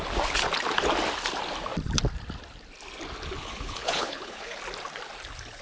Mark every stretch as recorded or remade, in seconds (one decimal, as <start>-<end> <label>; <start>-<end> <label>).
0.0-3.4 recorded; 3.4-4.6 remade; 4.6-5.6 recorded